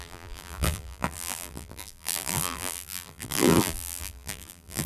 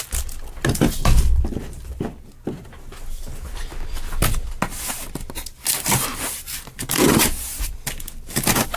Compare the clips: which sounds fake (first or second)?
first